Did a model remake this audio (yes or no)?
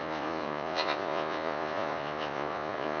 yes